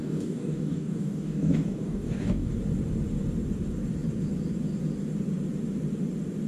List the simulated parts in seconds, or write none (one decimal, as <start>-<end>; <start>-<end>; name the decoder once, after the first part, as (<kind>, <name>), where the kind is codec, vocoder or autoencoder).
0.0-2.5 (codec, DAC)